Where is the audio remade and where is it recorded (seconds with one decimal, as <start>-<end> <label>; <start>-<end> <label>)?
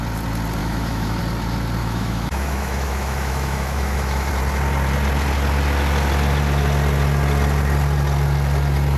0.0-0.6 recorded; 0.6-1.2 remade; 1.2-1.8 recorded; 1.8-4.3 remade; 4.3-9.0 recorded